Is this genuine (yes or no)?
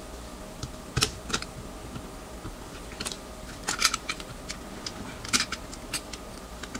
yes